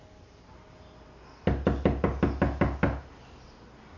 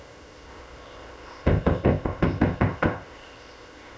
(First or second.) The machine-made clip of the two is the second